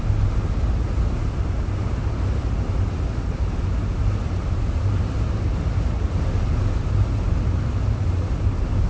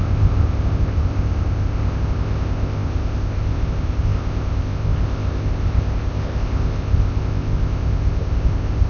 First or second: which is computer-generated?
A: second